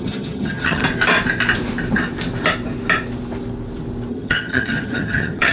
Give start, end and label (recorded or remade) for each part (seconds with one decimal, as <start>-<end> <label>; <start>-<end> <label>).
0.0-0.8 remade; 0.8-4.1 recorded; 4.1-5.5 remade